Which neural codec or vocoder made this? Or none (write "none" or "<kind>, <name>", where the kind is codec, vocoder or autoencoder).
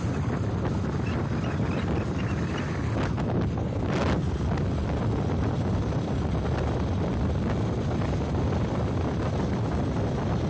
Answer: none